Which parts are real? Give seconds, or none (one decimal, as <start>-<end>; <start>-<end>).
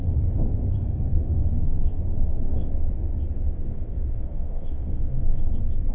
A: 2.7-3.6; 5.5-5.9